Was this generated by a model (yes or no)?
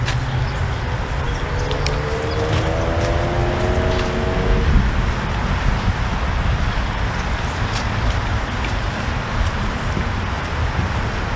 no